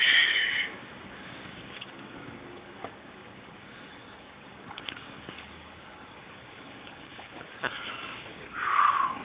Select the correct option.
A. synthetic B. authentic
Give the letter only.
A